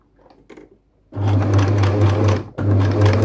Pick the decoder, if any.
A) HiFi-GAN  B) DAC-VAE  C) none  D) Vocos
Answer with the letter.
C